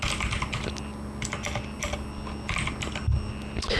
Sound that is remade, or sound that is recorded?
recorded